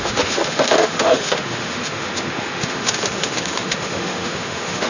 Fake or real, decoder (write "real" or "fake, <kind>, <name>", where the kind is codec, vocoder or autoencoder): fake, autoencoder, DAC-VAE